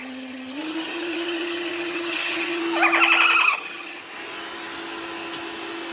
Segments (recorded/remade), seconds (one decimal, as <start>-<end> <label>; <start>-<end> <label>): 0.0-2.6 remade; 2.6-3.5 recorded; 3.5-4.0 remade; 4.0-5.9 recorded

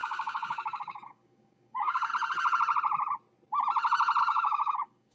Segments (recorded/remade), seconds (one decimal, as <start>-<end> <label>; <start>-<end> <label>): 0.0-2.1 remade; 2.1-4.2 recorded; 4.2-5.1 remade

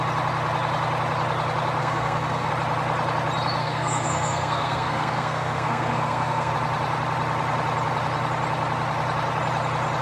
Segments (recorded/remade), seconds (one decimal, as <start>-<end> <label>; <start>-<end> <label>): 0.0-1.8 recorded; 1.8-2.5 remade; 2.5-3.6 recorded; 3.6-6.5 remade; 6.5-10.0 recorded